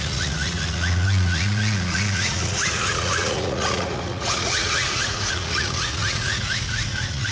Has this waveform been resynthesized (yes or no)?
yes